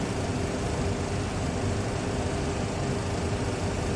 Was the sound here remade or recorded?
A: recorded